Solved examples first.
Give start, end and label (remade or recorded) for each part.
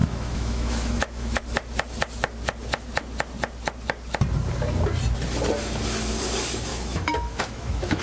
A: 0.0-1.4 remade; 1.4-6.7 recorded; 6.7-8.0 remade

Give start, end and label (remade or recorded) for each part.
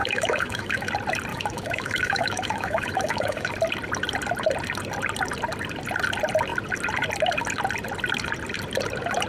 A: 0.0-0.9 remade; 0.9-1.3 recorded; 1.3-3.5 remade; 3.5-9.3 recorded